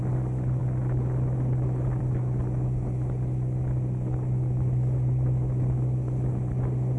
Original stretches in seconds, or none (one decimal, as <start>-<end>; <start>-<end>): 0.0-7.0